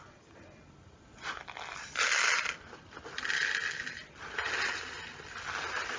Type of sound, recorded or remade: recorded